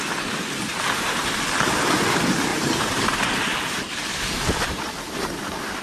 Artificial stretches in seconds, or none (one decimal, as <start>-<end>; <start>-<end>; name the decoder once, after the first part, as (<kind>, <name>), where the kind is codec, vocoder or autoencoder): 0.7-1.2 (vocoder, BigVGAN v2); 2.5-5.8